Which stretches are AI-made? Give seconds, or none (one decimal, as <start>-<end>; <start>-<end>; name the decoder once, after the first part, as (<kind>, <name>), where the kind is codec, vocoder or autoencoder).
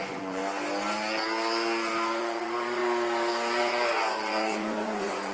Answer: 0.0-0.4 (vocoder, Vocos); 2.2-2.8; 3.6-5.3